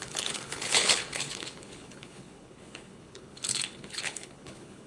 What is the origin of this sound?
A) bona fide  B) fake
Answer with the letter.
B